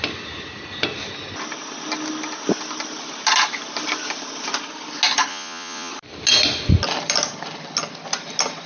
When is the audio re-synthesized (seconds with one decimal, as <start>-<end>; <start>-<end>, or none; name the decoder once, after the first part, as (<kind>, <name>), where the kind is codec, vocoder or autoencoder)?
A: 5.3-5.9 (vocoder, Vocos)